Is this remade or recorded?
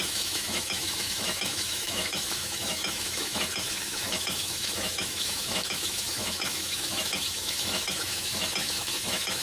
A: remade